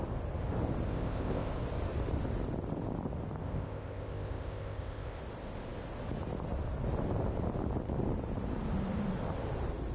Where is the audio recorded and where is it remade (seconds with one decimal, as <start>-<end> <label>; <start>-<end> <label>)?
0.0-0.9 recorded; 0.9-1.5 remade; 1.5-3.4 recorded; 3.4-5.2 remade; 5.2-9.9 recorded